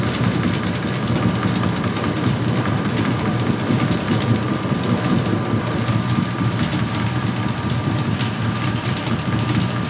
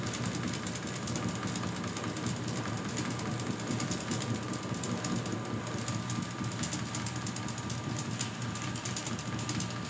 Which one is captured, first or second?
second